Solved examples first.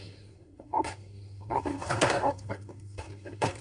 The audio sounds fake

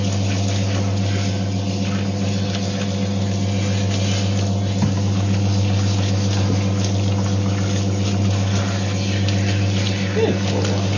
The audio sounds real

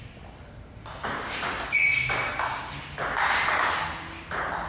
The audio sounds real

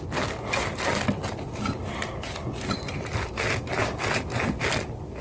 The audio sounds real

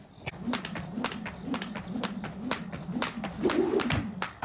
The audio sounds real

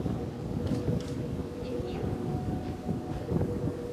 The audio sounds fake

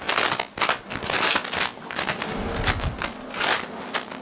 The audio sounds real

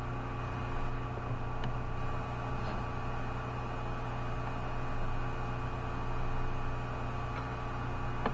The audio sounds real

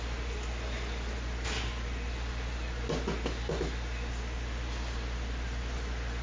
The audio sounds real